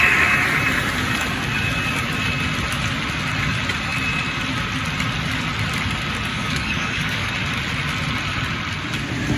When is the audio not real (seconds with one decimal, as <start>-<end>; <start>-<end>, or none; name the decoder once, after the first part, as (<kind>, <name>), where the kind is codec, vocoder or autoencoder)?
6.3-7.3 (codec, DAC)